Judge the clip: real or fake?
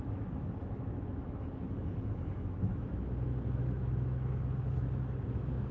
fake